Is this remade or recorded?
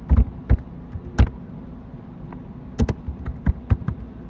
recorded